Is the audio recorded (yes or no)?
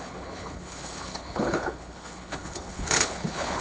no